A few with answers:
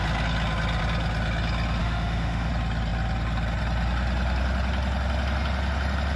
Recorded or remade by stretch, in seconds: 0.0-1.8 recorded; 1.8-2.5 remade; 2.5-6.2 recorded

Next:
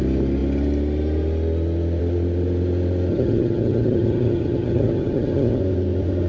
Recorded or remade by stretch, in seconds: 0.0-3.1 recorded; 3.1-5.6 remade; 5.6-6.3 recorded

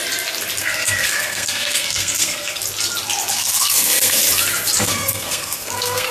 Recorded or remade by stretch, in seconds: 0.0-0.6 recorded; 0.6-2.6 remade; 2.6-3.3 recorded; 3.3-4.2 remade; 4.2-4.8 recorded; 4.8-6.1 remade

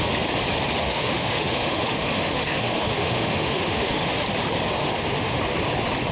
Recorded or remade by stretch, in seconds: 0.0-0.8 recorded; 0.8-4.2 remade; 4.2-4.8 recorded; 4.8-5.4 remade; 5.4-6.1 recorded